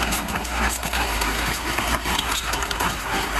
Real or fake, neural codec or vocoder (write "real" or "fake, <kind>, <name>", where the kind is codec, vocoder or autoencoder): fake, codec, SNAC